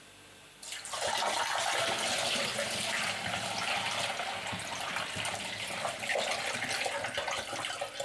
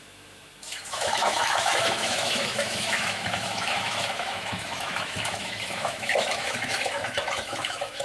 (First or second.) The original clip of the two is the first